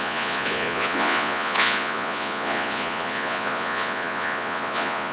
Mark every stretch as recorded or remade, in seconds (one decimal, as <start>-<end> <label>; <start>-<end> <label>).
0.0-5.1 remade